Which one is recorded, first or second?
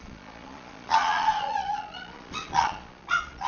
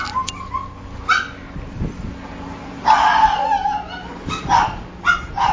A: second